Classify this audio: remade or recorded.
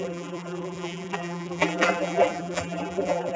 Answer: remade